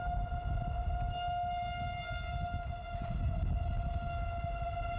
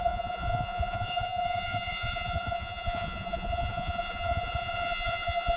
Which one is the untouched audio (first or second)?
first